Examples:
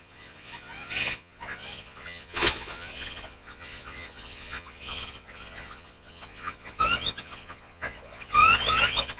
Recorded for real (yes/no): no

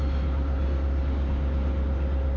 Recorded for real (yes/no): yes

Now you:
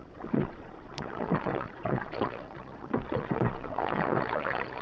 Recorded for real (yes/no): no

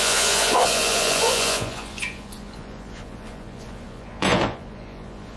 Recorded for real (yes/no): no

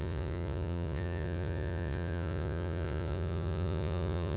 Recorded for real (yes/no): no